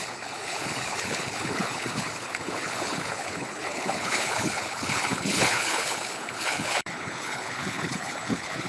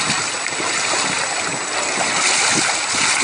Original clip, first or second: second